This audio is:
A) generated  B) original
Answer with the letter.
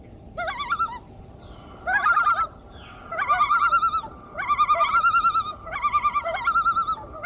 B